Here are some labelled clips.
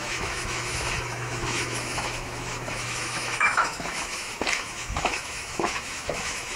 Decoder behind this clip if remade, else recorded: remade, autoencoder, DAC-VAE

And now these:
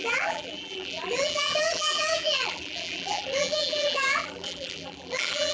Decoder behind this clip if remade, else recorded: remade, vocoder, BigVGAN v2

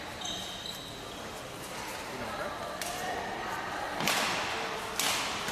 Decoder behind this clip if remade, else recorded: recorded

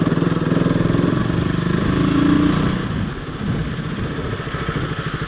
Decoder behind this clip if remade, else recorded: recorded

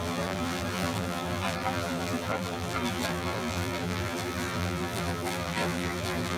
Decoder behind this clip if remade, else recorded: remade, vocoder, BigVGAN v2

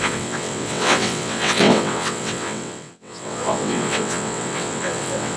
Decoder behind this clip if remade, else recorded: remade, vocoder, WaveNeXt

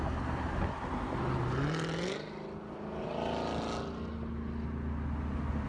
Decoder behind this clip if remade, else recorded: recorded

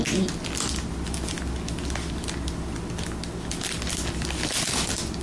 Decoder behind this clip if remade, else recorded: recorded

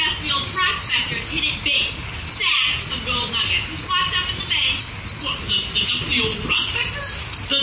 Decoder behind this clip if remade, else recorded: recorded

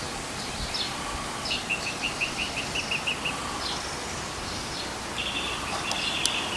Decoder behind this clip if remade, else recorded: recorded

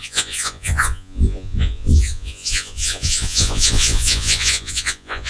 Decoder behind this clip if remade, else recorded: remade, vocoder, Vocos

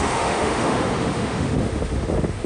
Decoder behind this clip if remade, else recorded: remade, autoencoder, DAC-VAE